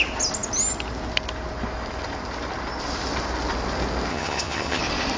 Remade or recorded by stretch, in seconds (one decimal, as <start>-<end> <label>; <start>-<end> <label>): 0.0-4.1 recorded; 4.1-4.8 remade; 4.8-5.2 recorded